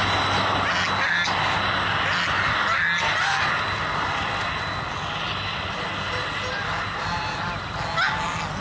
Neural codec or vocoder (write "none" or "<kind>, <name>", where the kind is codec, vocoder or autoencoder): none